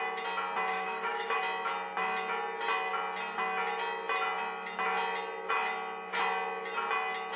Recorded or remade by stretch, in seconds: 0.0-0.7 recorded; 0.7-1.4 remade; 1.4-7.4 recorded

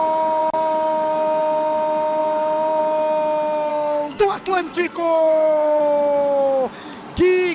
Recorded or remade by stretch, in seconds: 0.0-3.7 recorded; 3.7-5.8 remade; 5.8-7.5 recorded

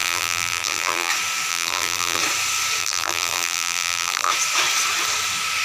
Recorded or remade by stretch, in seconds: 0.0-1.1 remade; 1.1-1.5 recorded; 1.5-2.2 remade; 2.2-2.8 recorded; 2.8-4.3 remade; 4.3-5.6 recorded

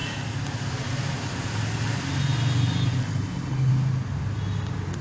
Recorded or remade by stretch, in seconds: 0.0-3.0 recorded; 3.0-3.7 remade; 3.7-5.0 recorded

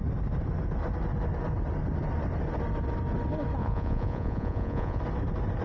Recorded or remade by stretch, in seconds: 0.0-3.6 recorded; 3.6-5.0 remade; 5.0-5.6 recorded

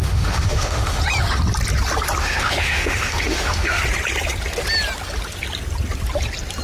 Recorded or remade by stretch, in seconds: 0.0-1.0 remade; 1.0-2.2 recorded; 2.2-3.8 remade; 3.8-6.6 recorded

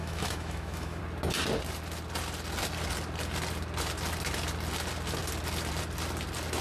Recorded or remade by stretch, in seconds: 0.0-1.0 remade; 1.0-6.6 recorded

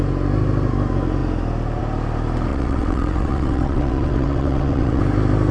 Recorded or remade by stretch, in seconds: 0.0-2.5 recorded; 2.5-5.0 remade; 5.0-5.5 recorded